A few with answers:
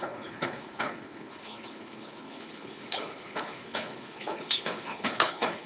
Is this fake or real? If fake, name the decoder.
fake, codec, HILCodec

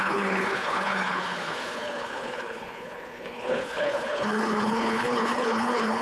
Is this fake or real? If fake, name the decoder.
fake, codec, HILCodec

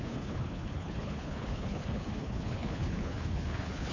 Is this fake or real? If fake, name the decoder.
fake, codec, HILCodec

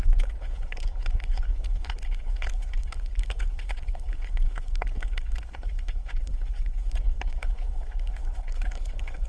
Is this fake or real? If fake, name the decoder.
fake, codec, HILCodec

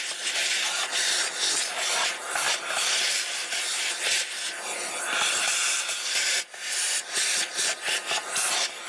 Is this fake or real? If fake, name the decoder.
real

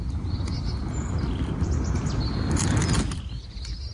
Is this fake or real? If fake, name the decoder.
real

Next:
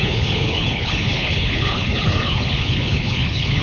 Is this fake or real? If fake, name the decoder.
fake, codec, HILCodec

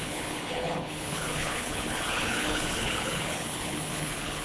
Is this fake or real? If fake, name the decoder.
fake, codec, HILCodec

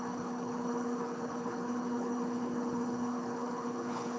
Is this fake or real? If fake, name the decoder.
fake, codec, HILCodec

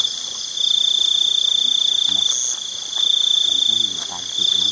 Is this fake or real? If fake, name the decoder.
real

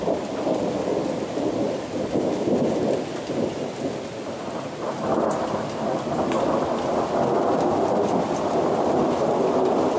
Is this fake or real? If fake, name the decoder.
real